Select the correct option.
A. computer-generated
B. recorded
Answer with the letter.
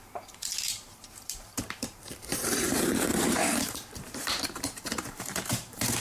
A